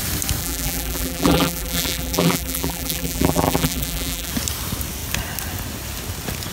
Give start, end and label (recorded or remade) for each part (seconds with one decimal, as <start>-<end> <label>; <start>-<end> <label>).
0.0-0.4 recorded; 0.4-4.3 remade; 4.3-6.5 recorded